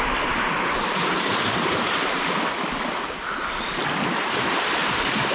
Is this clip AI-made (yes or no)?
no